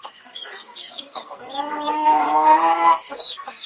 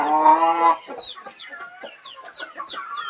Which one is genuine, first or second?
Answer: second